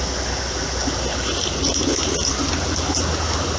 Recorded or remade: recorded